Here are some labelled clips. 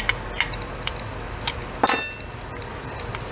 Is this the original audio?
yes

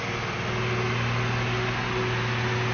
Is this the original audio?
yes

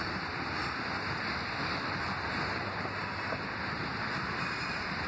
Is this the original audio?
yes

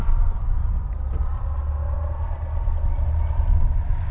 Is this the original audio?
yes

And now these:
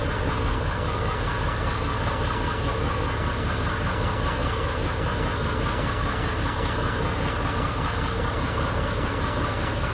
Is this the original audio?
no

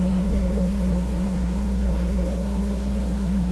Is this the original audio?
no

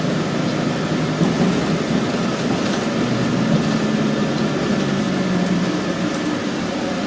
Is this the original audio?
yes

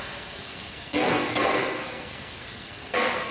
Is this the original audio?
no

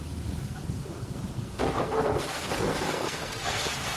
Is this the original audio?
no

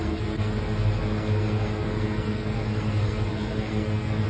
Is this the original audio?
no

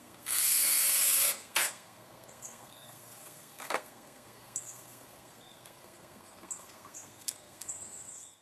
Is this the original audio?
no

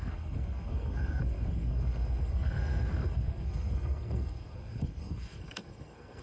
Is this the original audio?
no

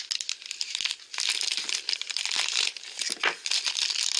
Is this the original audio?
yes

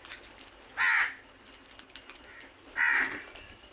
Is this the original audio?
yes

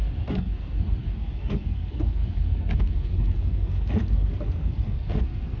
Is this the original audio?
no